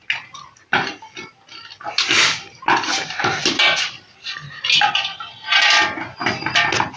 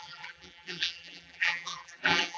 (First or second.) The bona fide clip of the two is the first